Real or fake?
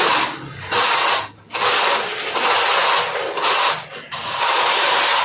real